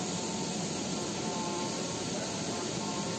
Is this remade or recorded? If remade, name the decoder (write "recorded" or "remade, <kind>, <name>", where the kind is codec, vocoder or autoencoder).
remade, vocoder, BigVGAN v2